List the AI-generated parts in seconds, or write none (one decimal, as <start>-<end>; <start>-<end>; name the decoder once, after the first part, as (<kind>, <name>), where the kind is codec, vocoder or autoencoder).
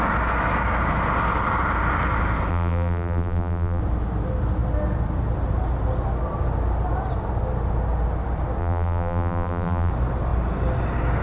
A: 2.5-3.8 (vocoder, BigVGAN v2); 8.6-9.9